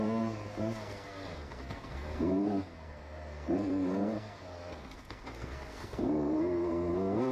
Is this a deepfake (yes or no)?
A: yes